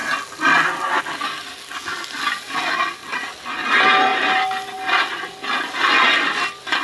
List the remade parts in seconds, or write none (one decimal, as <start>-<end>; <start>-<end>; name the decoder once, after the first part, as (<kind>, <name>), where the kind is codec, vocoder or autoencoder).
none